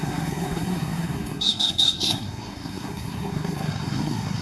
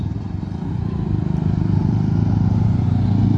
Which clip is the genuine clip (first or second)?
second